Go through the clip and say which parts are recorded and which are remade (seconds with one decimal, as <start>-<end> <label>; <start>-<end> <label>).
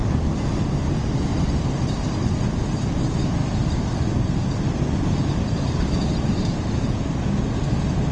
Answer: 0.0-0.8 remade; 0.8-1.3 recorded; 1.3-2.3 remade; 2.3-3.4 recorded; 3.4-6.8 remade; 6.8-8.1 recorded